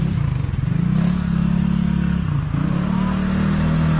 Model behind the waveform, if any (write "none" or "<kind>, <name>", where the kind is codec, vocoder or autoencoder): none